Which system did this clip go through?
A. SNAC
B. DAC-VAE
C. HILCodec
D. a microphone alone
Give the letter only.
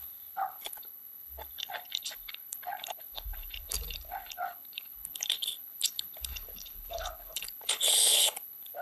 C